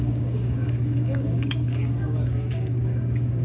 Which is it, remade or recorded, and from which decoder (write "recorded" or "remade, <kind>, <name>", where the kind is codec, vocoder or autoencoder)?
remade, codec, DAC